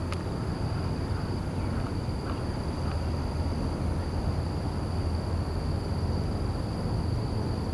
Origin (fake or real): real